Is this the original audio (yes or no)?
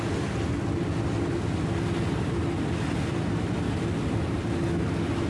yes